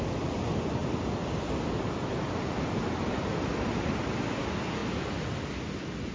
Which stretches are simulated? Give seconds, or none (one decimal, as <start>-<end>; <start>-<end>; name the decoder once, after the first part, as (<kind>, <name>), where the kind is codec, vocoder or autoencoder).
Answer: none